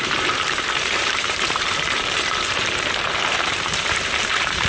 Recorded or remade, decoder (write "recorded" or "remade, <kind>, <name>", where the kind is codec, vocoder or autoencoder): remade, vocoder, BigVGAN v2